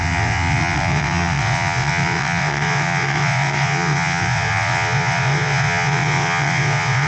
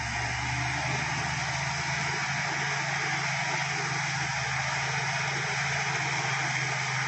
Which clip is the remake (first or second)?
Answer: first